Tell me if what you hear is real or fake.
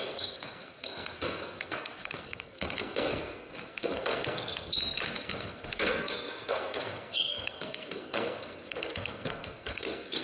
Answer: fake